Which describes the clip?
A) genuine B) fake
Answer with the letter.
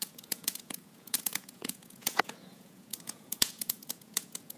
B